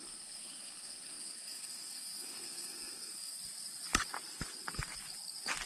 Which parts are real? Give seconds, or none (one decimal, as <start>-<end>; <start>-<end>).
3.4-5.7